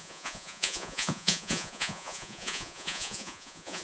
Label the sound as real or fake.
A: fake